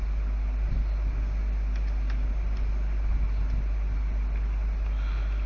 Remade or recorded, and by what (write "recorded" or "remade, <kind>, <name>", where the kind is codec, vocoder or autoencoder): recorded